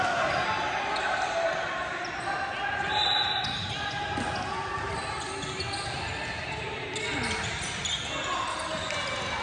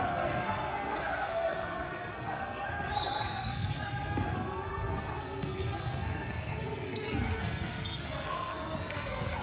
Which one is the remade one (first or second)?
second